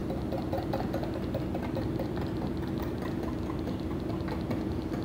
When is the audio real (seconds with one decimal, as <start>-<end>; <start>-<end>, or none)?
0.0-5.0